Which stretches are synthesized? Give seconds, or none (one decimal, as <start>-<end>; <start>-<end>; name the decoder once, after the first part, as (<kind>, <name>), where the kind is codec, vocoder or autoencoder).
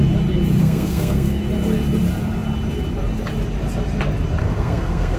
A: 0.6-1.4 (codec, SNAC); 4.4-5.2